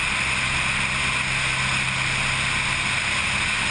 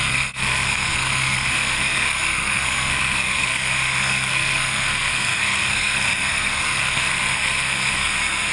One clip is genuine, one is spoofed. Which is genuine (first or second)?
first